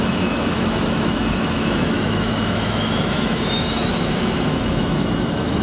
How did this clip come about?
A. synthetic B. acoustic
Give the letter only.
A